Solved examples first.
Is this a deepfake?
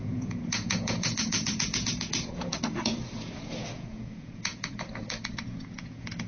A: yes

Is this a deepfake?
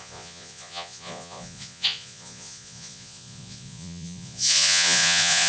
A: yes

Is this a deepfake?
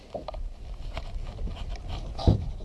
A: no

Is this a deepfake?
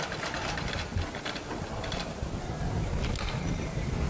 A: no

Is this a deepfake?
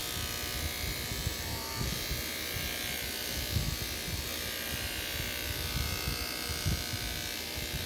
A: no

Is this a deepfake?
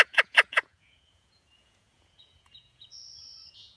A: yes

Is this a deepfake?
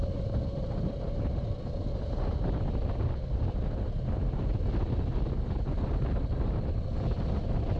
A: no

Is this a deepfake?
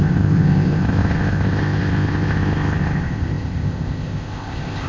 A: yes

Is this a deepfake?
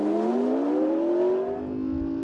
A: no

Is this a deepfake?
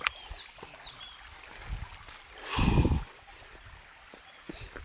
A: no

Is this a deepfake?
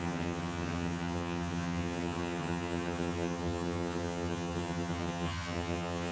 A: yes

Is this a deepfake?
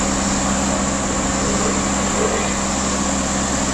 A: no